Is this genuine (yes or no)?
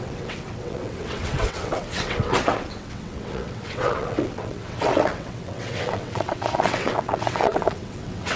no